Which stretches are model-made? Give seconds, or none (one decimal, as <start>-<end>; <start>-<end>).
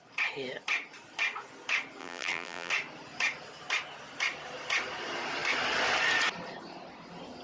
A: 2.0-2.7